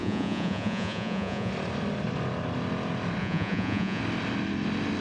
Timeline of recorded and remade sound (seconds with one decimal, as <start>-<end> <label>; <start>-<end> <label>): 0.0-1.5 remade; 1.5-3.2 recorded; 3.2-4.0 remade; 4.0-5.0 recorded